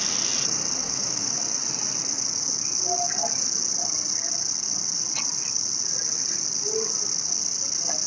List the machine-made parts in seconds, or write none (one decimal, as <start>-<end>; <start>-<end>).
0.8-1.4

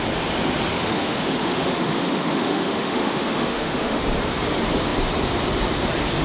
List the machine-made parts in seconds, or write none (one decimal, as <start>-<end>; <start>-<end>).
0.7-4.0

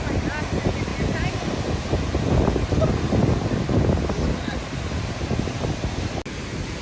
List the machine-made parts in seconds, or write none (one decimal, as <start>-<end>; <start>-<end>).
none